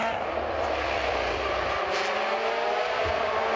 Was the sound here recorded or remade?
recorded